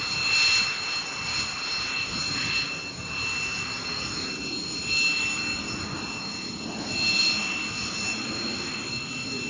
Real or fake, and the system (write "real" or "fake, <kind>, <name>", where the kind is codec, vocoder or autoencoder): real